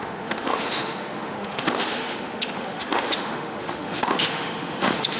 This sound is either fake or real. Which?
fake